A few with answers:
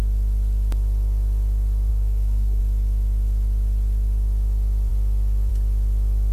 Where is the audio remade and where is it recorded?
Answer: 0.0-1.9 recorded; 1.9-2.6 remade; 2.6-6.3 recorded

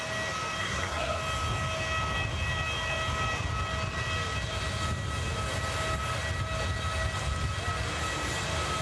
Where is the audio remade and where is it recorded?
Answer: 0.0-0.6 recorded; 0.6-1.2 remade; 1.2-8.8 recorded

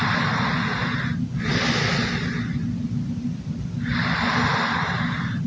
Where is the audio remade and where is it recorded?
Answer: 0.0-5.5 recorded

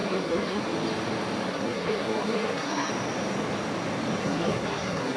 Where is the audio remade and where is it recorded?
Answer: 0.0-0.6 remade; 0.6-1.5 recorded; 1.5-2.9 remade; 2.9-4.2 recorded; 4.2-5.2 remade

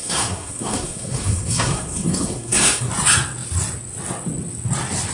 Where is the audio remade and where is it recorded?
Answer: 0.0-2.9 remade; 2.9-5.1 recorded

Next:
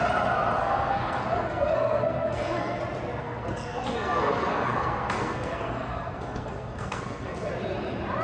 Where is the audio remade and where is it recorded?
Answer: 0.0-0.6 recorded; 0.6-2.8 remade; 2.8-3.2 recorded; 3.2-7.5 remade; 7.5-8.2 recorded

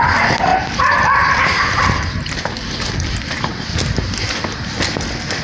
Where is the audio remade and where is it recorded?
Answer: 0.0-5.4 recorded